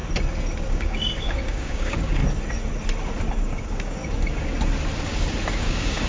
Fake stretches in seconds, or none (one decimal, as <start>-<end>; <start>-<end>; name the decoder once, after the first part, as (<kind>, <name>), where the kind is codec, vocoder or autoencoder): 0.7-2.2 (codec, DAC); 3.3-4.0; 5.6-6.1